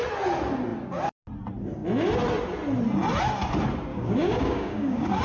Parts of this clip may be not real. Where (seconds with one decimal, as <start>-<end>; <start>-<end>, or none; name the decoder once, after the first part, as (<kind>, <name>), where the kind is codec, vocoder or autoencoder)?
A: 3.9-5.2 (codec, DAC)